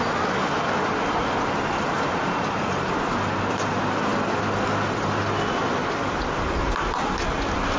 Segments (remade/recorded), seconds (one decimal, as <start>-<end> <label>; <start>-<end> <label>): 0.0-7.8 recorded